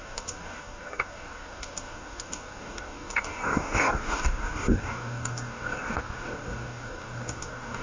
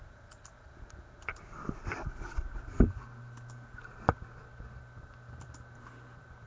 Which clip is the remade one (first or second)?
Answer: first